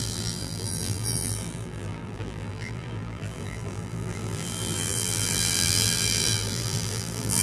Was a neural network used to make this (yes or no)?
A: yes